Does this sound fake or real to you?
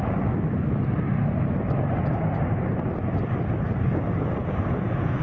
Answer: real